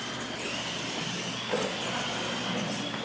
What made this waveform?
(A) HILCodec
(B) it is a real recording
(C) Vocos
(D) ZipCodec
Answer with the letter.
B